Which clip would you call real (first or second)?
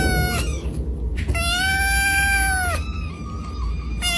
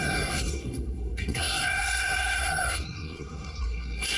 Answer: first